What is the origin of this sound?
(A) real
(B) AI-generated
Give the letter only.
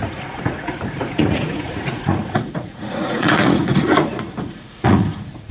B